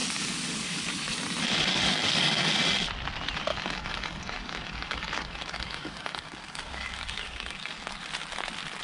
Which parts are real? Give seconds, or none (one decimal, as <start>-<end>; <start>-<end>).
0.8-1.7; 2.5-3.5; 7.9-8.8

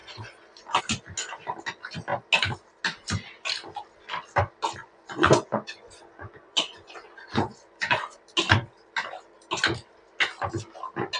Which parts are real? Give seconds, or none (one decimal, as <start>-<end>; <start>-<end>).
0.8-4.8; 8.2-11.2

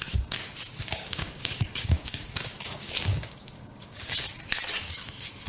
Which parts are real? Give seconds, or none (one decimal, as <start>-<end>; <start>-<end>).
0.0-0.8; 4.1-4.8

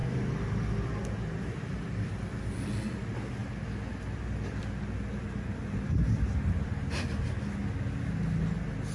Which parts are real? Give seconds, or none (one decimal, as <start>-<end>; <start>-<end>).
0.0-8.9

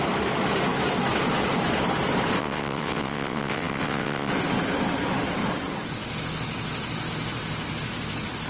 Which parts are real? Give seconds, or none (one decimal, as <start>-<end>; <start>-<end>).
0.0-2.4; 4.3-8.5